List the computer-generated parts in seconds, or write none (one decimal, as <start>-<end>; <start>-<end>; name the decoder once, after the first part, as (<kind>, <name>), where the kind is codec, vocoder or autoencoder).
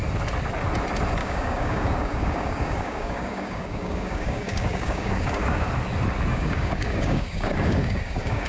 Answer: 1.2-5.7 (codec, DAC); 6.3-8.5